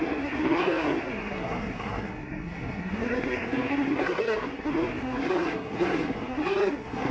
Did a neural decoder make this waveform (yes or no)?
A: yes